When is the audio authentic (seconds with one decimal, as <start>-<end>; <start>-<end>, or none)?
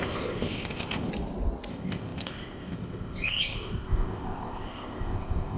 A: 1.1-1.7